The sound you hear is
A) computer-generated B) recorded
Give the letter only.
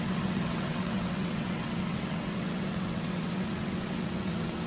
A